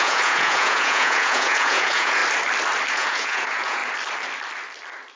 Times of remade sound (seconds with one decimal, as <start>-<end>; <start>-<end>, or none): 0.0-2.2; 2.9-3.8